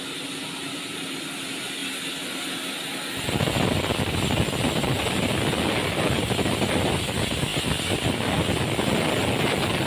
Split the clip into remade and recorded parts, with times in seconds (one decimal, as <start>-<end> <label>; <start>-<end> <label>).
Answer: 0.0-9.9 recorded